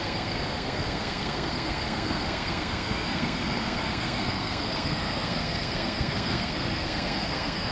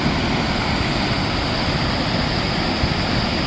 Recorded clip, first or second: second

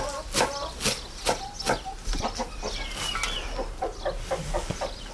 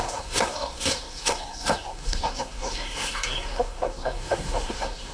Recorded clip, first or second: first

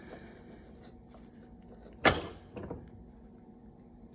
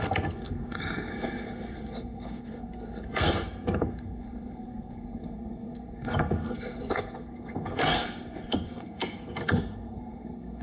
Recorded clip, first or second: first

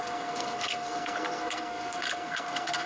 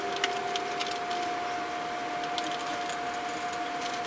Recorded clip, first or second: second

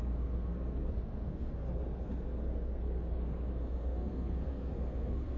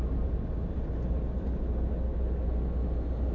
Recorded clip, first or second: second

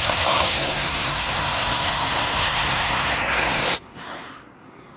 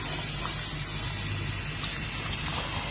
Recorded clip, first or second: second